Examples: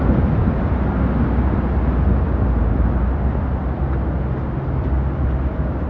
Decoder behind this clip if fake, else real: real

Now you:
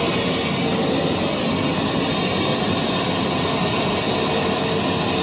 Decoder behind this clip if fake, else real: real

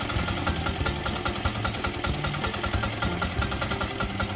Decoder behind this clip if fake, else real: real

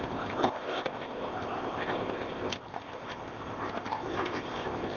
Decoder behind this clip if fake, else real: fake, codec, ZipCodec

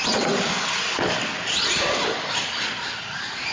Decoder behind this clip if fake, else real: real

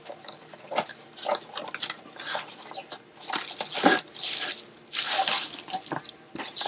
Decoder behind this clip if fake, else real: real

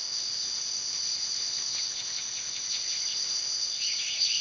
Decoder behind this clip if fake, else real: fake, codec, ZipCodec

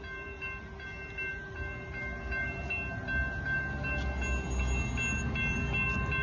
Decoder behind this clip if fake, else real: real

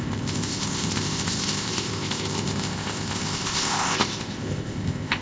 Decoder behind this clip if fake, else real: fake, codec, ZipCodec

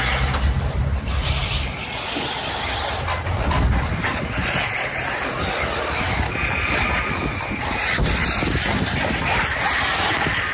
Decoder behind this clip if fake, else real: real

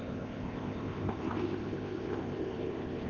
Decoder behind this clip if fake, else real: fake, codec, ZipCodec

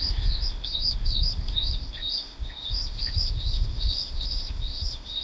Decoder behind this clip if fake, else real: fake, codec, ZipCodec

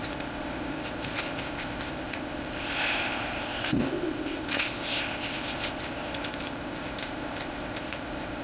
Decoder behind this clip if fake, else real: fake, codec, ZipCodec